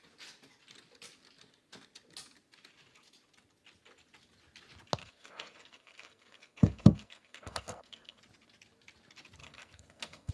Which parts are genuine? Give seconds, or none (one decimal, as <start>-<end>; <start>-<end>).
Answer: 0.0-5.0; 8.2-9.4